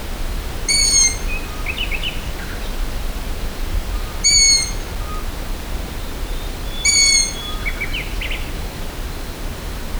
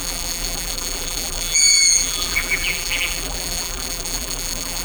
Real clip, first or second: first